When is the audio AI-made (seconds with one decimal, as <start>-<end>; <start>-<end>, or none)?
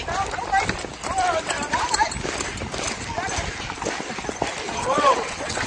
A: 4.8-5.7